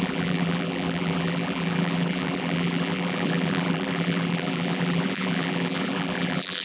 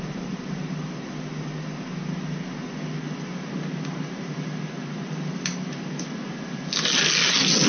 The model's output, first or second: first